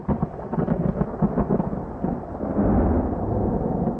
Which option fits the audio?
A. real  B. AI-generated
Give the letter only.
A